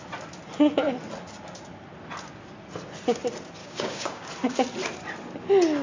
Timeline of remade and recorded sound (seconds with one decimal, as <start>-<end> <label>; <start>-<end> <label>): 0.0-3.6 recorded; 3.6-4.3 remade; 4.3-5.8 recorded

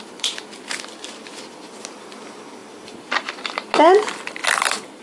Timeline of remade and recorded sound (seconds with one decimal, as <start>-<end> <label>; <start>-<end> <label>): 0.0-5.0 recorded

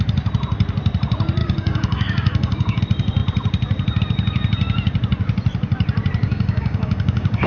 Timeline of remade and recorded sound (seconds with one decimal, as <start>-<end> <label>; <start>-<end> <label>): 0.0-1.4 recorded; 1.4-2.8 remade; 2.8-6.2 recorded; 6.2-7.5 remade

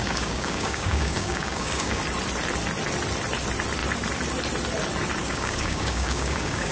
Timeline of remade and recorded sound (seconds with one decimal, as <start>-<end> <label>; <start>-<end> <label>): 0.0-2.0 remade; 2.0-5.2 recorded; 5.2-6.7 remade

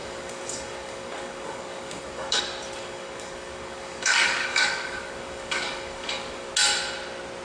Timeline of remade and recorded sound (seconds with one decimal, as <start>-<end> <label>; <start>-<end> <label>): 0.0-2.4 remade; 2.4-2.8 recorded; 2.8-6.5 remade; 6.5-7.4 recorded

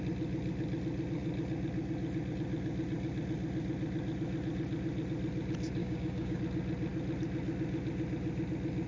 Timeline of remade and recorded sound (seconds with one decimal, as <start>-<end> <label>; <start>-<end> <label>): 0.0-5.8 recorded; 5.8-6.4 remade; 6.4-8.9 recorded